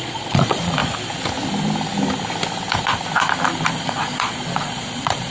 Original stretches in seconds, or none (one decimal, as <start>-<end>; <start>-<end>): 0.8-3.7